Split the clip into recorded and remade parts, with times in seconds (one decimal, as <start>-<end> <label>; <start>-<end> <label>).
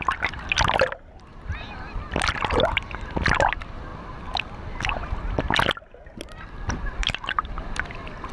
0.0-7.0 recorded; 7.0-7.5 remade; 7.5-8.3 recorded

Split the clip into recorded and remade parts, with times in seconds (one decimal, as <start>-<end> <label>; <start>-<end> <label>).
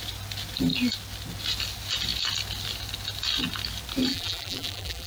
0.0-4.1 recorded; 4.1-5.1 remade